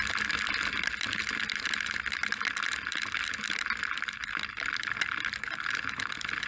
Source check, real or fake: real